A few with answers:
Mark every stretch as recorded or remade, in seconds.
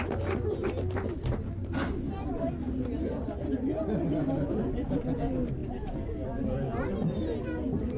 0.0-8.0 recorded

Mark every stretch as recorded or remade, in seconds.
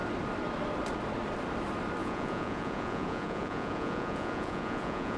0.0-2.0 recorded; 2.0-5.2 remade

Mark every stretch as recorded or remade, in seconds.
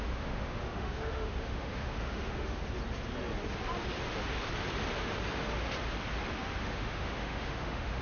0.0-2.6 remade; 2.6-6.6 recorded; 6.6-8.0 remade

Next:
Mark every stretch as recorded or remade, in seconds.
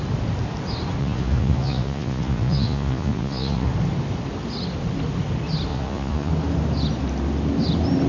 0.0-1.0 recorded; 1.0-3.7 remade; 3.7-5.7 recorded; 5.7-6.3 remade; 6.3-8.1 recorded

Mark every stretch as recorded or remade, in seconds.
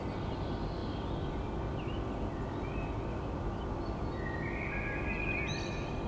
0.0-6.1 recorded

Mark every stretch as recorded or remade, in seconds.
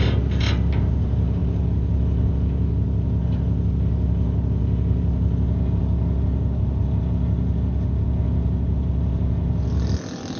0.0-10.4 recorded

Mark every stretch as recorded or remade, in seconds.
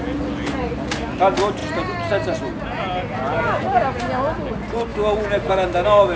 0.0-6.2 recorded